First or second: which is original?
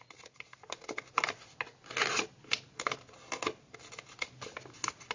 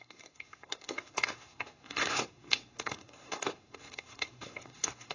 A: first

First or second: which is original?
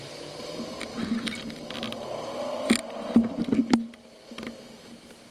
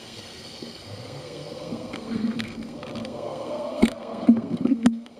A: first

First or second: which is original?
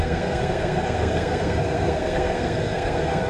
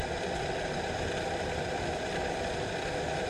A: second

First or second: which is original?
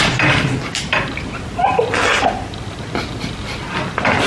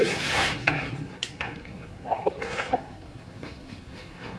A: first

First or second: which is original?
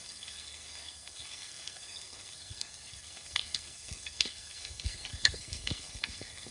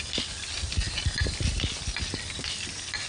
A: second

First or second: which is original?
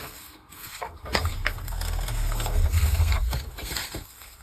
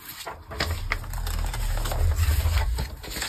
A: second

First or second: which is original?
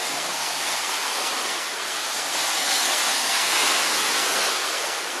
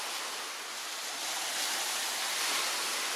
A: second